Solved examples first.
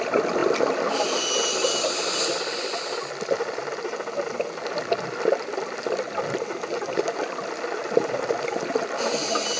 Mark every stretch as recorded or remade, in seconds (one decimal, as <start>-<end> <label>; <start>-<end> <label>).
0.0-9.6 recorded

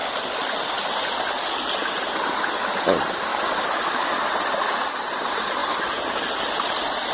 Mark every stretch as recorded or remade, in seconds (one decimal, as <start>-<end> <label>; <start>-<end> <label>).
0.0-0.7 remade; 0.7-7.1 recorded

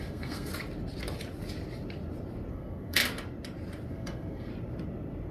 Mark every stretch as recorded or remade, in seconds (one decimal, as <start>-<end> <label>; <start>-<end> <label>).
0.0-0.5 remade; 0.5-2.5 recorded; 2.5-3.0 remade; 3.0-3.9 recorded; 3.9-4.5 remade; 4.5-5.3 recorded

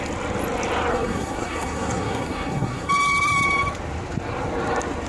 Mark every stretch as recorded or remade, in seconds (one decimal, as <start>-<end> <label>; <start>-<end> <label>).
0.0-0.9 recorded; 0.9-2.9 remade; 2.9-5.1 recorded